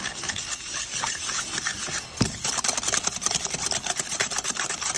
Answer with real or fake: fake